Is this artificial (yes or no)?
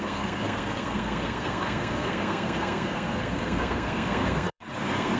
yes